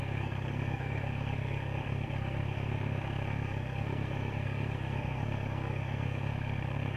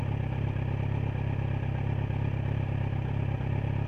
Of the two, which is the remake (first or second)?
first